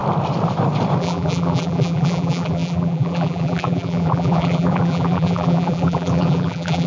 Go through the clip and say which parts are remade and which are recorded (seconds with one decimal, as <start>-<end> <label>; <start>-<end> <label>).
0.0-1.0 recorded; 1.0-6.9 remade